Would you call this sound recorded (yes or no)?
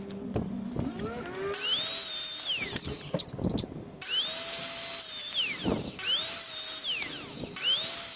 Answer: yes